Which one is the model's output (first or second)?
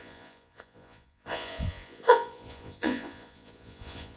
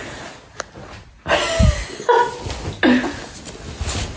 first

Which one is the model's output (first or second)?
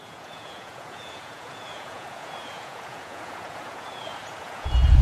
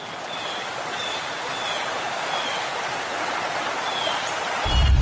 first